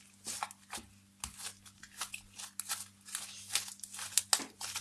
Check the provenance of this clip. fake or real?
real